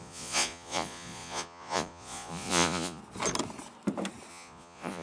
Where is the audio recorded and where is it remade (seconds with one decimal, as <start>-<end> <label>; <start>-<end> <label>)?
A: 0.0-3.0 remade; 3.0-4.3 recorded; 4.3-5.0 remade